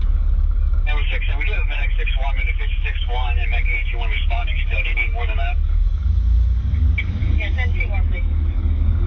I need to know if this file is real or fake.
fake